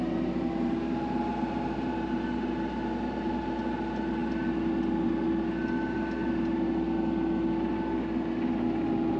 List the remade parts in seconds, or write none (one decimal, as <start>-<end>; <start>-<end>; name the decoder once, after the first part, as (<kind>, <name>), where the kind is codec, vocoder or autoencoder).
none